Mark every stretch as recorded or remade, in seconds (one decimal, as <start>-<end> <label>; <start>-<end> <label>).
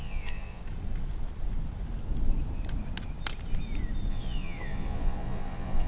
0.0-0.6 remade; 0.6-4.1 recorded; 4.1-5.9 remade